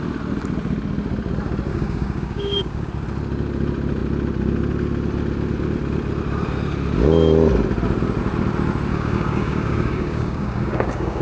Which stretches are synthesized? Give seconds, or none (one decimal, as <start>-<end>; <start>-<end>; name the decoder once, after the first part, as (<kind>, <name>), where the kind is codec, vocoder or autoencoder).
1.7-2.9 (codec, DAC); 8.9-11.2